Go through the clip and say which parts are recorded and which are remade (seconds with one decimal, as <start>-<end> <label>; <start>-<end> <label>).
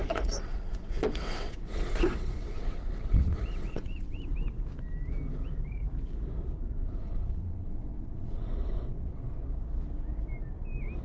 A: 0.0-4.2 remade; 4.2-7.0 recorded; 7.0-9.4 remade; 9.4-11.0 recorded